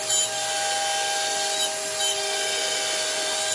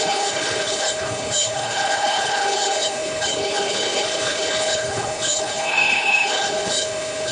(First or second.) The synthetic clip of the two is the second